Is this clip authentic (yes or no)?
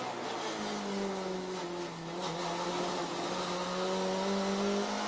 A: yes